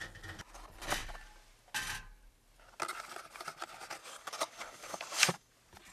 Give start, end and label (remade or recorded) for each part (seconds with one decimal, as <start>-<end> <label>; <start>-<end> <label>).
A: 0.0-4.0 recorded; 4.0-5.5 remade; 5.5-5.9 recorded